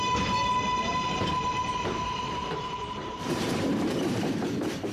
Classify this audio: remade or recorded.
remade